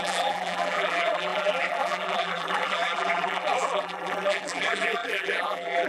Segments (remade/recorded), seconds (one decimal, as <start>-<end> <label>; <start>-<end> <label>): 0.0-5.9 remade